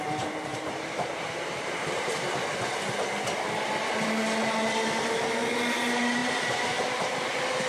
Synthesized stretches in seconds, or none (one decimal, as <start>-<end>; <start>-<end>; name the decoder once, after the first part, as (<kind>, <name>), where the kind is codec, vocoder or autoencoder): 0.5-2.1 (vocoder, BigVGAN v2); 6.2-7.7